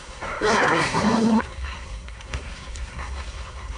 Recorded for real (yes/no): no